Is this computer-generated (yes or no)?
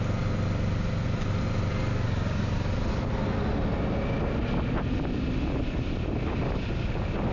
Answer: no